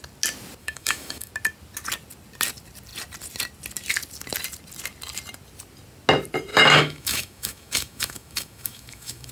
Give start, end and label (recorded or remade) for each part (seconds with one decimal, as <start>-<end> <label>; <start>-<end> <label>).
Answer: 0.0-0.6 recorded; 0.6-1.3 remade; 1.3-6.5 recorded; 6.5-9.3 remade